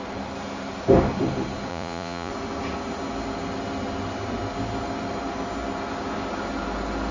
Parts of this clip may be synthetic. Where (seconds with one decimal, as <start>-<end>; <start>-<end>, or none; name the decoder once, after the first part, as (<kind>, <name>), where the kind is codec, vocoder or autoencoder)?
1.7-2.3 (vocoder, Vocos)